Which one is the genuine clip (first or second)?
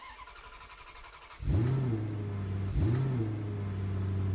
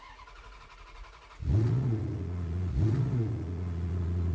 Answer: first